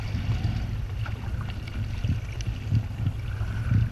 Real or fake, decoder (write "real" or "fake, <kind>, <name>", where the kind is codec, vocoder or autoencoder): real